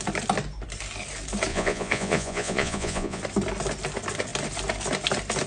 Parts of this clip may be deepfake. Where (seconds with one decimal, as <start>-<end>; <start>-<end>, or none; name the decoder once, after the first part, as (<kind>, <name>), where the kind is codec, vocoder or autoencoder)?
1.5-3.2 (vocoder, Vocos)